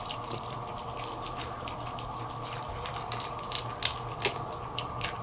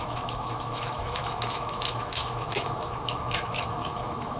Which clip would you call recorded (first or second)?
first